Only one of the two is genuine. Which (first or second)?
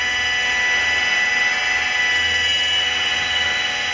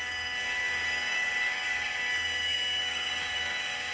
first